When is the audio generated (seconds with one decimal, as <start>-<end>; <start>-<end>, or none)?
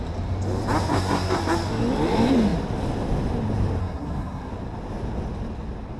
0.9-1.4; 3.8-4.5